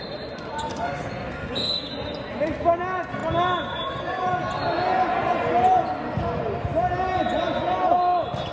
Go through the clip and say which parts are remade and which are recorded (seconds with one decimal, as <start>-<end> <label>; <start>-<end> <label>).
0.0-0.7 recorded; 0.7-1.9 remade; 1.9-8.5 recorded